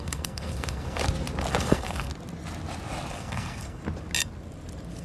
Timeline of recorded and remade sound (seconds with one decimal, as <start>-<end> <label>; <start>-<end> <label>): 0.0-1.0 remade; 1.0-1.5 recorded; 1.5-2.1 remade; 2.1-3.1 recorded; 3.1-3.8 remade; 3.8-5.0 recorded